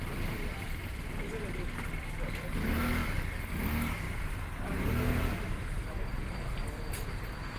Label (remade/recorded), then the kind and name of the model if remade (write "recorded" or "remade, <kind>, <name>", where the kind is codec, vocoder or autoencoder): recorded